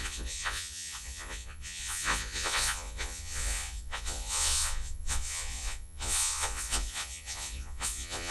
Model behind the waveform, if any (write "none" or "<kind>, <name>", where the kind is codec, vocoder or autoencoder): vocoder, Vocos